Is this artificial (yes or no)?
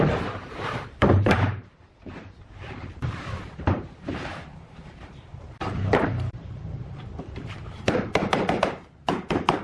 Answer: yes